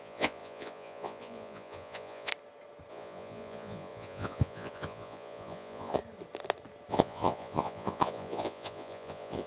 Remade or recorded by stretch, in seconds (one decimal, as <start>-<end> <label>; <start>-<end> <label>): 0.0-2.3 remade; 2.3-2.9 recorded; 2.9-6.0 remade; 6.0-6.9 recorded; 6.9-9.5 remade